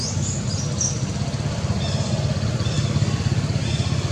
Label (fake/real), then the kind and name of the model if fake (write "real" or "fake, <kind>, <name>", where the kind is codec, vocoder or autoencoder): real